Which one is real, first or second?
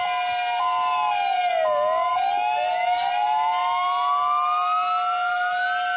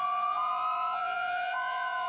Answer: first